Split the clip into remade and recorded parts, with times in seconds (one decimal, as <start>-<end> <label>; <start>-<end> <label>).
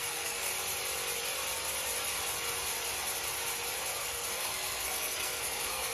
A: 0.0-0.5 remade; 0.5-4.0 recorded; 4.0-5.9 remade